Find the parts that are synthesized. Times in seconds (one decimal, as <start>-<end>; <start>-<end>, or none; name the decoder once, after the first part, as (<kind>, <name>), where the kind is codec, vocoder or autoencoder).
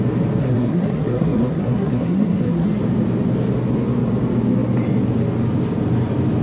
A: 0.4-2.8 (codec, SNAC)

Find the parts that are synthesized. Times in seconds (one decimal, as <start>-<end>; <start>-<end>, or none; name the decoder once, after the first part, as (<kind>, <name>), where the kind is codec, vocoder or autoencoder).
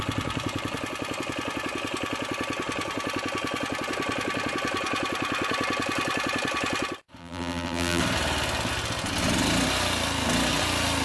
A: 7.2-8.0 (vocoder, BigVGAN v2)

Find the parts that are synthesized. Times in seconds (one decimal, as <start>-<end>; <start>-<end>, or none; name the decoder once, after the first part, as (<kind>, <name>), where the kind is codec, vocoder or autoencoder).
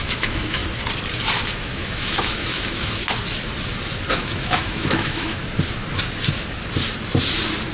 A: 0.0-0.6 (autoencoder, DAC-VAE); 1.4-3.0; 4.1-5.4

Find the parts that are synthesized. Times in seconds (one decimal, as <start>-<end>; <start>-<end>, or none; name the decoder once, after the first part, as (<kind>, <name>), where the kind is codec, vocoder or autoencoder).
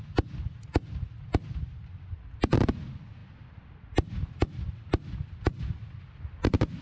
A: none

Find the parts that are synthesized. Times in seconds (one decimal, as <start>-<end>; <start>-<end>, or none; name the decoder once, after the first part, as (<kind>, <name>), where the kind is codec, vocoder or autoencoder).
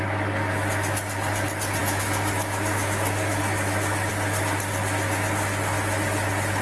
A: 1.8-4.1 (autoencoder, DAC-VAE)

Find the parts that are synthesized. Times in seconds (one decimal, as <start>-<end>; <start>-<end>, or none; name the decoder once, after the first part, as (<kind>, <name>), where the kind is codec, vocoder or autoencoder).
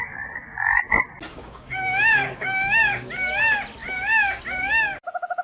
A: 1.3-3.1 (codec, DAC); 3.8-4.4